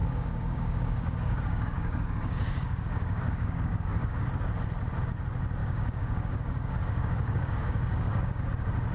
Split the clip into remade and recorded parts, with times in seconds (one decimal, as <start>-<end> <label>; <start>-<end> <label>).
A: 0.0-4.3 remade; 4.3-5.6 recorded; 5.6-8.4 remade; 8.4-8.9 recorded